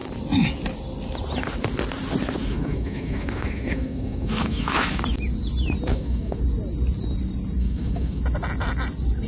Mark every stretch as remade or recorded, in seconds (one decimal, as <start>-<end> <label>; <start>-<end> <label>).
0.0-2.4 recorded; 2.4-5.0 remade; 5.0-5.9 recorded; 5.9-6.4 remade; 6.4-7.6 recorded; 7.6-8.2 remade; 8.2-9.3 recorded